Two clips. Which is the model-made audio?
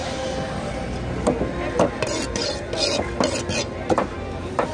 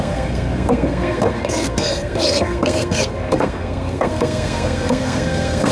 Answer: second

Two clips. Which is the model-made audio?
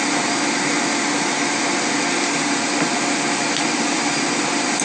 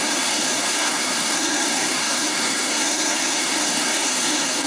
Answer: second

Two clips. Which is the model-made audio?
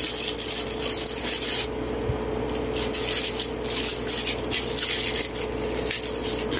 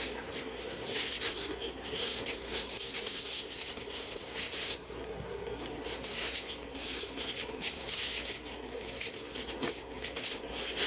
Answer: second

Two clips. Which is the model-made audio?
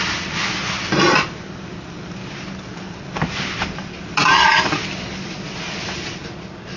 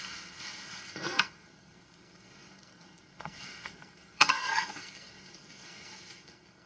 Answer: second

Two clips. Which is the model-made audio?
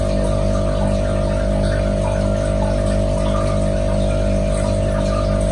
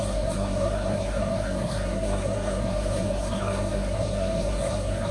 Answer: second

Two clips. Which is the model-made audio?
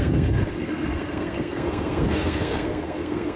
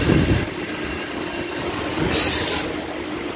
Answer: first